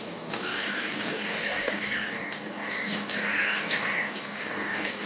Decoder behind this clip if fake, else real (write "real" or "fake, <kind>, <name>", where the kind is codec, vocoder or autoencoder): fake, codec, DAC